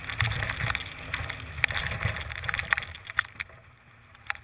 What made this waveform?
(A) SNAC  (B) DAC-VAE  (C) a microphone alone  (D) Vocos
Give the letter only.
C